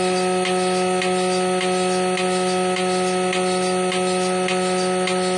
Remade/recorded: recorded